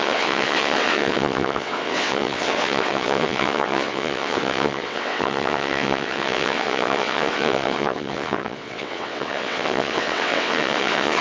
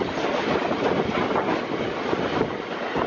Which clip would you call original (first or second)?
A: second